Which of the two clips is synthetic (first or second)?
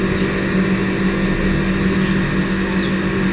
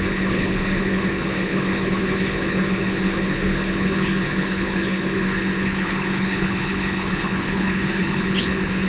second